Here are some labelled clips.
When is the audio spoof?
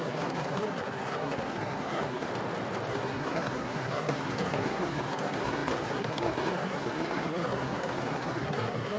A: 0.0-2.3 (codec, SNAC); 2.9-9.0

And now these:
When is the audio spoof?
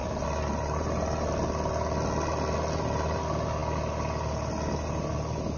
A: none